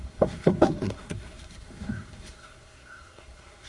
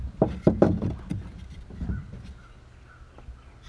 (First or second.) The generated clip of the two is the first